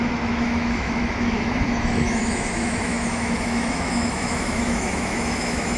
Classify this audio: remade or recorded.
remade